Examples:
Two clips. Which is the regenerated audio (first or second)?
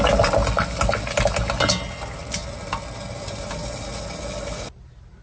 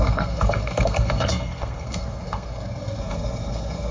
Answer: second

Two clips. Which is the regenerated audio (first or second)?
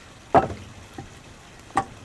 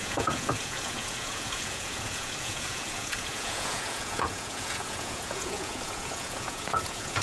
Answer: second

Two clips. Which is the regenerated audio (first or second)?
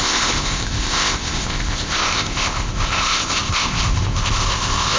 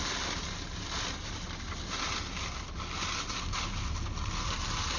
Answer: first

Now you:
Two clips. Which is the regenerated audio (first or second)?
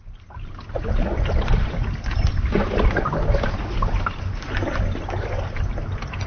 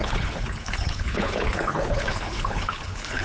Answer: second